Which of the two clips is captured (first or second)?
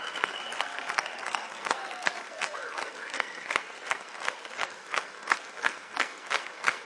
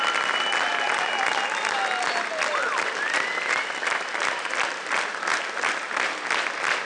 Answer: second